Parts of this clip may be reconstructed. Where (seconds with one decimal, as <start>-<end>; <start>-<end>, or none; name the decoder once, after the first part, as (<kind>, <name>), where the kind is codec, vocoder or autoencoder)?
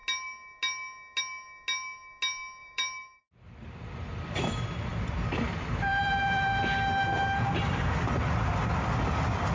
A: 2.6-3.2 (vocoder, BigVGAN v2); 4.9-6.6